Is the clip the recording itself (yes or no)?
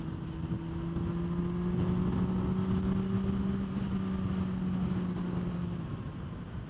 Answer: yes